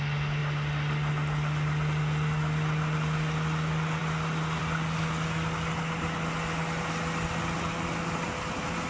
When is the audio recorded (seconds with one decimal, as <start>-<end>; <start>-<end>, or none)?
0.0-8.9